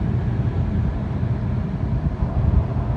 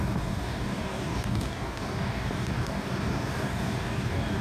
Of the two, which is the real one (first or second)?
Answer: first